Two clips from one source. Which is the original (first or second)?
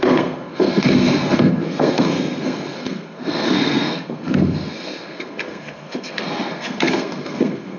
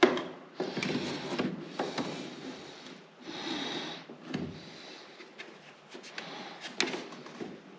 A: second